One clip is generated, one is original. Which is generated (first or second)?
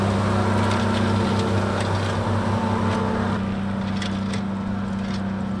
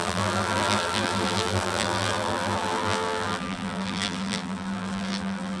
second